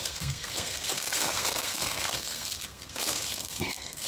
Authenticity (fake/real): fake